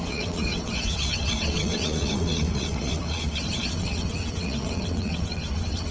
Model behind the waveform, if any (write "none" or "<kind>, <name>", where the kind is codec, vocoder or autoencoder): vocoder, WaveNeXt